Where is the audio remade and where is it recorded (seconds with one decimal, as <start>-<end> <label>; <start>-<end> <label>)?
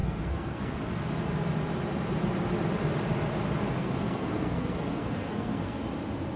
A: 0.0-0.8 remade; 0.8-3.8 recorded; 3.8-5.8 remade; 5.8-6.4 recorded